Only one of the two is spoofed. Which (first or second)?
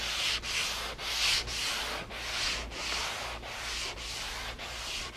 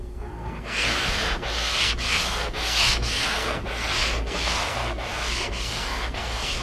second